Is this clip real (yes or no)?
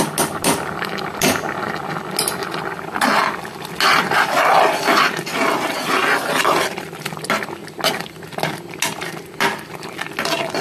yes